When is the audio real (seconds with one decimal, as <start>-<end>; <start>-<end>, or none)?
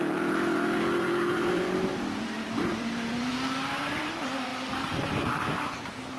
1.9-2.7; 3.3-3.9; 4.5-6.2